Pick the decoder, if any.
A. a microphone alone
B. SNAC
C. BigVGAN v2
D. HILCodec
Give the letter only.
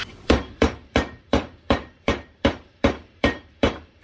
C